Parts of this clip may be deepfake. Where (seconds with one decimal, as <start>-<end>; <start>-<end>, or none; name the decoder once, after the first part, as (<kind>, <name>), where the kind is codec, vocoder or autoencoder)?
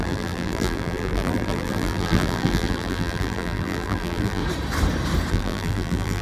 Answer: 0.0-4.4 (vocoder, BigVGAN v2); 5.3-6.2